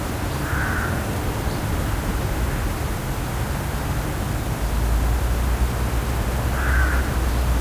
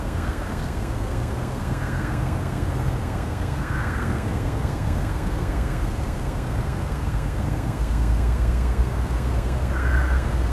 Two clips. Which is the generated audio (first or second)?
second